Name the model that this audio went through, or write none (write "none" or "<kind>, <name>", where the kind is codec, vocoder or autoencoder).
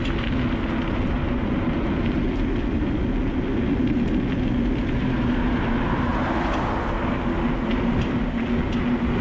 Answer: none